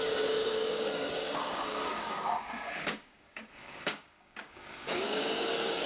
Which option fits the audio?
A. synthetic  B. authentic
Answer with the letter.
A